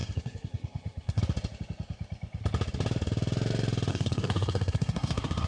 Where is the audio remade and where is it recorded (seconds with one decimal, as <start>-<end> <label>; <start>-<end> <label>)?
0.0-1.2 remade; 1.2-3.9 recorded; 3.9-5.5 remade